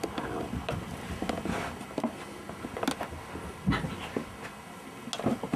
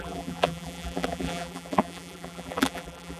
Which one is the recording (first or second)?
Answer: first